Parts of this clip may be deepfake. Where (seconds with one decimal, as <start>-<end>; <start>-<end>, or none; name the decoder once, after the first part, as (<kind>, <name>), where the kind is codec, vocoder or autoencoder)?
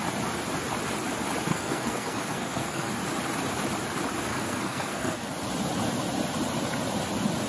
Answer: 1.5-2.9 (codec, SNAC); 4.3-5.3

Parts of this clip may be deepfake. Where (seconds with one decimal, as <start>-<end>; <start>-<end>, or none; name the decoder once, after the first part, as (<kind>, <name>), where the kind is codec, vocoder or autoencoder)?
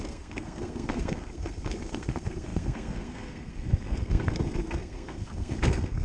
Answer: 0.0-6.0 (codec, SNAC)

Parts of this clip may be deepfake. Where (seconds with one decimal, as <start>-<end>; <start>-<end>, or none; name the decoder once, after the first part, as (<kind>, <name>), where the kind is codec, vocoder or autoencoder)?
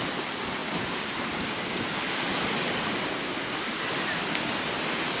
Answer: none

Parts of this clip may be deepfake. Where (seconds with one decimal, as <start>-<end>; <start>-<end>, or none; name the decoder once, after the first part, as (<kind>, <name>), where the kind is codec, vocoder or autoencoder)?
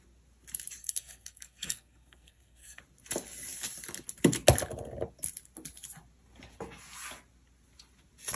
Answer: 0.8-2.8 (codec, SNAC)